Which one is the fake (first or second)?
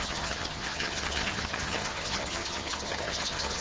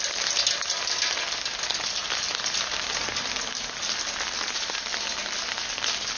first